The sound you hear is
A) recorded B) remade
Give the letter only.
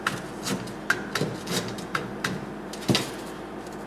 A